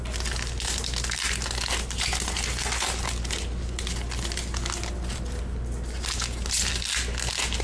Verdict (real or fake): real